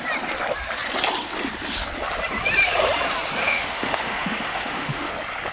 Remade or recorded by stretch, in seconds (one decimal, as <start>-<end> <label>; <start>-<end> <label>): 0.0-3.4 recorded; 3.4-5.1 remade; 5.1-5.5 recorded